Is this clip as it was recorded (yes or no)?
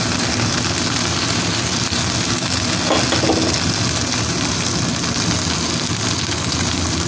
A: yes